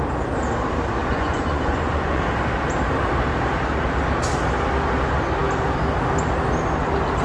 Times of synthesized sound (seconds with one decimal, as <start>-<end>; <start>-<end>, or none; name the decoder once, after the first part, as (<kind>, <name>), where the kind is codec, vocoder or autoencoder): 1.0-2.2 (vocoder, Vocos)